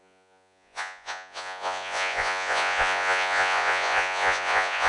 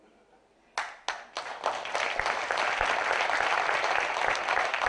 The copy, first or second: first